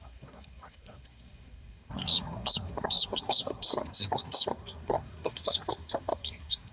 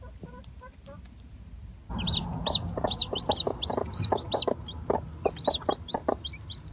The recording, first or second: second